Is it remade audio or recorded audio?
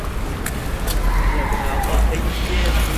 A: recorded